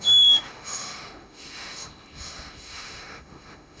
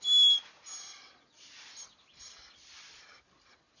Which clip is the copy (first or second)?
first